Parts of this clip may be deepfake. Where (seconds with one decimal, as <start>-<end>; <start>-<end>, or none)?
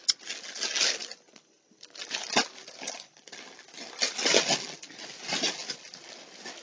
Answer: none